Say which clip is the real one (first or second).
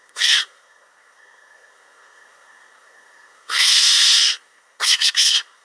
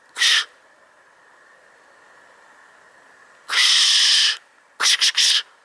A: second